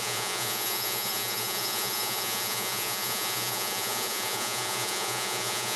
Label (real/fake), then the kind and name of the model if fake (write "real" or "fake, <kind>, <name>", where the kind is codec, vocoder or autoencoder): fake, vocoder, Vocos